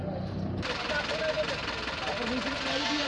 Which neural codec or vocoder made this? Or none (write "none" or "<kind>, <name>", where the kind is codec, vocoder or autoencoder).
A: none